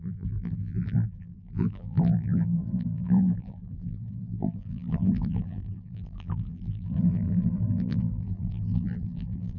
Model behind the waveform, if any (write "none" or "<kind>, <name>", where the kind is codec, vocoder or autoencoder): vocoder, BigVGAN v2